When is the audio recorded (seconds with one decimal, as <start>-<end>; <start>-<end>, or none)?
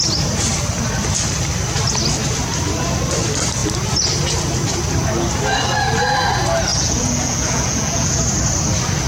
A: 0.0-6.7; 8.2-9.1